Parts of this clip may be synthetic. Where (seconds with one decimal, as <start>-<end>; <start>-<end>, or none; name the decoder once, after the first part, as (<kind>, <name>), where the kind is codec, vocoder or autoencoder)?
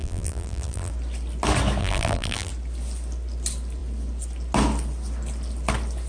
0.0-0.9 (vocoder, BigVGAN v2); 1.8-2.5